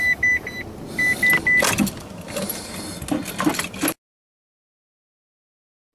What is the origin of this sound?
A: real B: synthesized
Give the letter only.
A